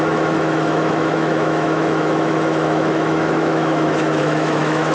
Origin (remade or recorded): remade